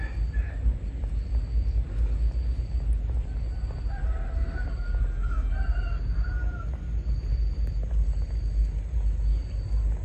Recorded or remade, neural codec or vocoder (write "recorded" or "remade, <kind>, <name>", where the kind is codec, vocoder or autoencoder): recorded